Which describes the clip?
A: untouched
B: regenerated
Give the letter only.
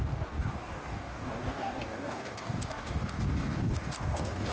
B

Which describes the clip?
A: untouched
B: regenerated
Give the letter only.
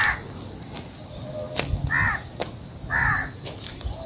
A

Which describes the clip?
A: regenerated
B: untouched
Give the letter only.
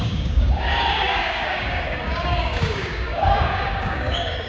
A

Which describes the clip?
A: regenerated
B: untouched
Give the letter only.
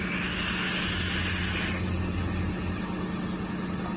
B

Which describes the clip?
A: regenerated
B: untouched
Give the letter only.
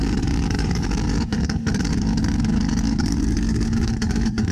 A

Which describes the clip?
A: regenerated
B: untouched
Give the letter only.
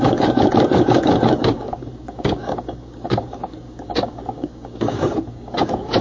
A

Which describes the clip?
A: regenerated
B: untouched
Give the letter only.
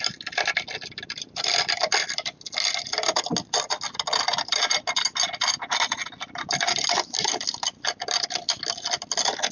B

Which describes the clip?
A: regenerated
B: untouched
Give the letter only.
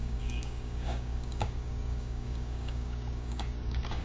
A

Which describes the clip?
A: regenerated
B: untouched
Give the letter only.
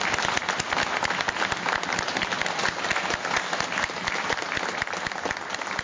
B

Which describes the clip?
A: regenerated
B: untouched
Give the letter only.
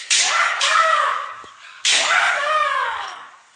A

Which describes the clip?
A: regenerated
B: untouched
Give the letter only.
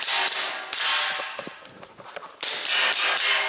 B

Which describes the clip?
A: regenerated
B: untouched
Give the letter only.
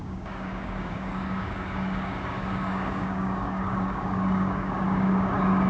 A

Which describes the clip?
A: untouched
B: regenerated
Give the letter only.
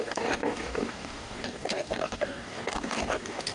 B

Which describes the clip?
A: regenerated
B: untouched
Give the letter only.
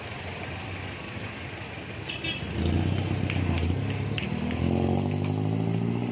B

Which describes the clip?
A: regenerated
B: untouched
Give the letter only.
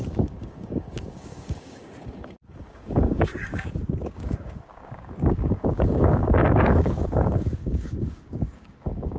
A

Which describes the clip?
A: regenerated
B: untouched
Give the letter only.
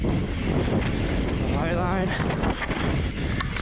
B